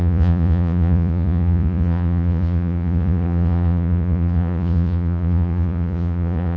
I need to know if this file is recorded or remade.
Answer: remade